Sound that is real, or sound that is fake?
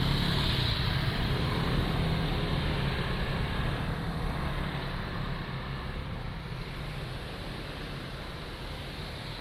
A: real